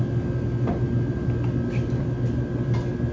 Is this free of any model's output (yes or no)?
yes